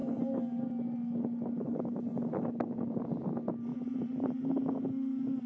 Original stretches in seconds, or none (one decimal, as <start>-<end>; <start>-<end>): 0.0-3.7; 4.3-5.5